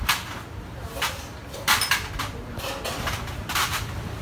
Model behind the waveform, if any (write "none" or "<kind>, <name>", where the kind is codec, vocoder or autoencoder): vocoder, BigVGAN v2